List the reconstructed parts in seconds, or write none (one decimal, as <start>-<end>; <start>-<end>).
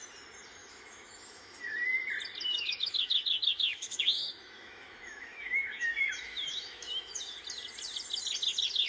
0.6-1.6; 2.5-7.2